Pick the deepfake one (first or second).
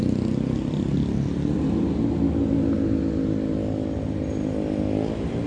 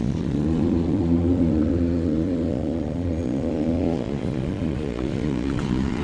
second